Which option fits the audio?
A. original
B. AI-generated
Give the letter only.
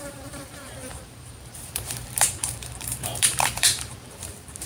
B